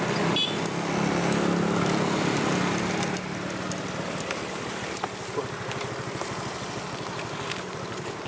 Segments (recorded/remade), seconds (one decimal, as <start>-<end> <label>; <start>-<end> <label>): 0.0-8.3 recorded

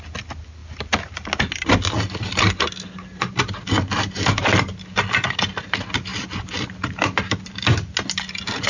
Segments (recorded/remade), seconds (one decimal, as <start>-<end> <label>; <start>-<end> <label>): 0.0-8.7 recorded

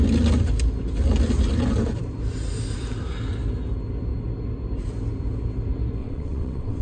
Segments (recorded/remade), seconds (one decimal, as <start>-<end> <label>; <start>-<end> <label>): 0.0-6.0 recorded; 6.0-6.8 remade

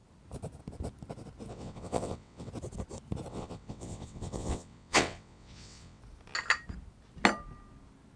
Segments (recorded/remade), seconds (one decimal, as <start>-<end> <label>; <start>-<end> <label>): 0.0-1.5 recorded; 1.5-2.5 remade; 2.5-3.3 recorded; 3.3-6.0 remade; 6.0-8.2 recorded